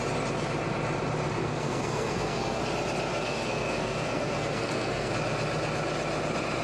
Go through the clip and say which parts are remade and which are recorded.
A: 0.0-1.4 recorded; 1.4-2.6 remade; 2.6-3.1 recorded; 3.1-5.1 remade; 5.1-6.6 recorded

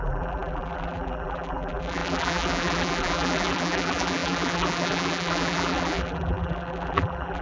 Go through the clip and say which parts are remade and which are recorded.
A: 0.0-7.4 remade

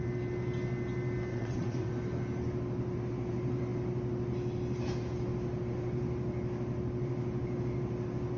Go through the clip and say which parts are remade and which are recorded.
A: 0.0-1.3 recorded; 1.3-1.9 remade; 1.9-8.4 recorded

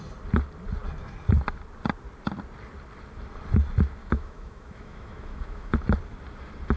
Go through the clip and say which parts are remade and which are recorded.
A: 0.0-4.0 recorded; 4.0-5.7 remade; 5.7-6.8 recorded

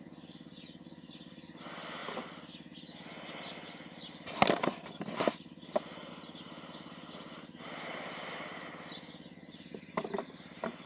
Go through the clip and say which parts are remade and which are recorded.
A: 0.0-10.9 recorded

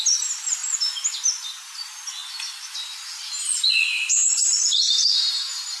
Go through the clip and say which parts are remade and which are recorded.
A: 0.0-2.2 recorded; 2.2-2.7 remade; 2.7-5.8 recorded